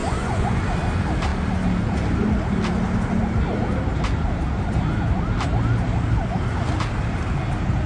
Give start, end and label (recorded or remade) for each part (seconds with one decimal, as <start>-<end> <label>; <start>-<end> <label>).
0.0-0.6 remade; 0.6-7.9 recorded